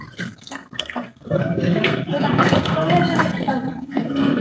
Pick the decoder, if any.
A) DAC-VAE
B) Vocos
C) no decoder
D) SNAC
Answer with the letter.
D